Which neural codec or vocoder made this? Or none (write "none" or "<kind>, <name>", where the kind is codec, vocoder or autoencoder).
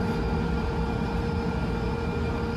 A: none